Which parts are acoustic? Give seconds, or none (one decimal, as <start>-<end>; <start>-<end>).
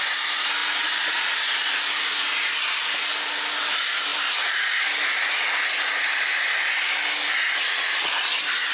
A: 0.0-8.7